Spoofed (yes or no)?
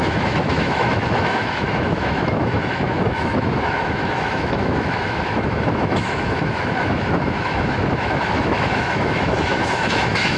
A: yes